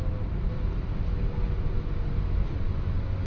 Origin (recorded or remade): recorded